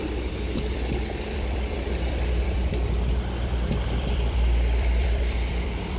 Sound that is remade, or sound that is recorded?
remade